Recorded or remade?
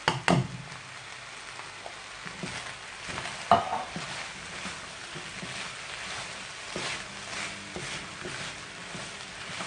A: recorded